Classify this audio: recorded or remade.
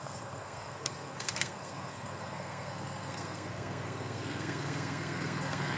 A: remade